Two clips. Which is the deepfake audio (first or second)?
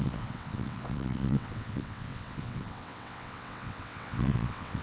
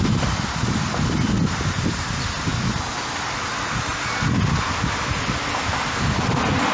first